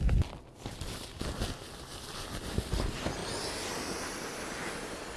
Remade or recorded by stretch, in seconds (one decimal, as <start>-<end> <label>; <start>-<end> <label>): 0.0-5.2 recorded